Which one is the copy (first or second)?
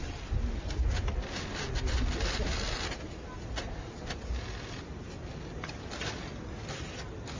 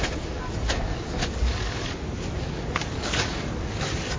second